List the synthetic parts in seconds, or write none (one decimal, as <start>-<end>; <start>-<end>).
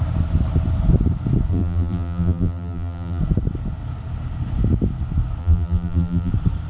1.5-3.2; 5.4-6.3